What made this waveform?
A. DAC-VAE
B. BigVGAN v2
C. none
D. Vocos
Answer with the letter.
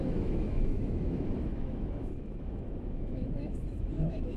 A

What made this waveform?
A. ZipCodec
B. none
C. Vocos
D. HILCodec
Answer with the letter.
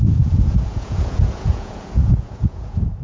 C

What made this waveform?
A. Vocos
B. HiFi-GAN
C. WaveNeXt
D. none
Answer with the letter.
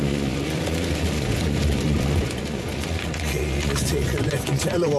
A